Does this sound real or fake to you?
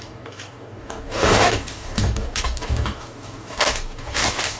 fake